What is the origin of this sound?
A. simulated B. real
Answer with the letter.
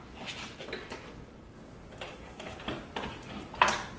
B